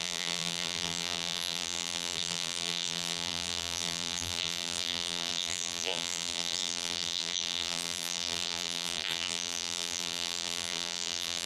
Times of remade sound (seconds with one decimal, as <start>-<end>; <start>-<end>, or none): 0.0-11.5